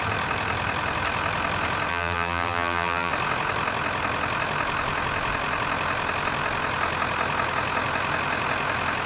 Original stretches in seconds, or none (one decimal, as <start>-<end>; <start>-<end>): 0.0-1.9; 3.1-9.1